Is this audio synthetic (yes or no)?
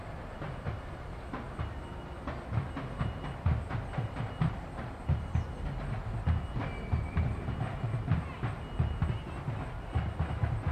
no